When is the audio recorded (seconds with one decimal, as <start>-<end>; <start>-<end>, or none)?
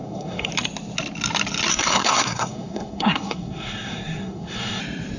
0.5-1.7; 4.8-5.2